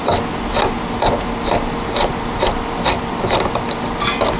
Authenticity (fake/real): real